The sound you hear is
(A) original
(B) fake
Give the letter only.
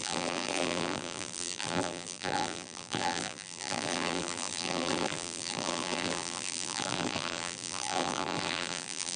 B